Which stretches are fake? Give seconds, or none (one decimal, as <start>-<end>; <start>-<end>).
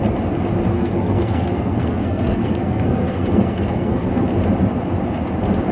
0.7-4.1